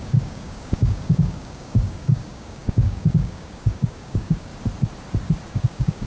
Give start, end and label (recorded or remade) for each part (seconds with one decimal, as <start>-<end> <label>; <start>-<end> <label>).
0.0-4.5 remade; 4.5-5.5 recorded; 5.5-6.1 remade